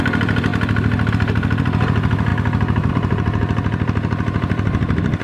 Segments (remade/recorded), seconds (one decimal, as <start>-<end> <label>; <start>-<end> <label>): 0.0-0.5 remade; 0.5-1.1 recorded; 1.1-2.3 remade; 2.3-2.9 recorded; 2.9-5.2 remade